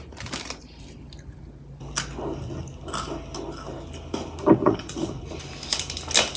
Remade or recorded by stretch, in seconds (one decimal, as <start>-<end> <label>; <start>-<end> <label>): 0.0-4.6 recorded; 4.6-5.3 remade; 5.3-6.4 recorded